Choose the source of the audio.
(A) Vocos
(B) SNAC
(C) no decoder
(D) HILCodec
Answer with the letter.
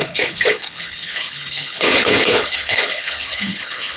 D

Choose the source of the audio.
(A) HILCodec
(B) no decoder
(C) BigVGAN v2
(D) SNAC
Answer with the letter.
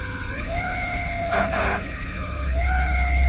A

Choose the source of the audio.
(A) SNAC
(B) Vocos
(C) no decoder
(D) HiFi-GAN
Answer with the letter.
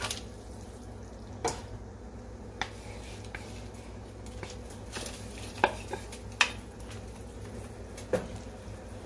C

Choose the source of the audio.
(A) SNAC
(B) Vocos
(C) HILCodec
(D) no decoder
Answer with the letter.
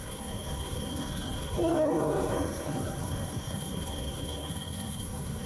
A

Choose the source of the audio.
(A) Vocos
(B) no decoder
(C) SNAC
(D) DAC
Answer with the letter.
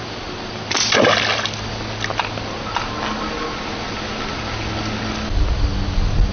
B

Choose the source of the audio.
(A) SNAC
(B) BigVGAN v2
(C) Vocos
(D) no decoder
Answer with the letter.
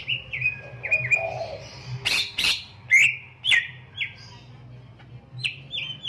D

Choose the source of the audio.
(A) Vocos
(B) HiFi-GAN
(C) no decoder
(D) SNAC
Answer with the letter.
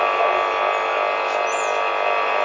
C